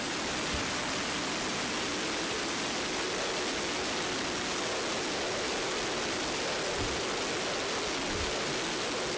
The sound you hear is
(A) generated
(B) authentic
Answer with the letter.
B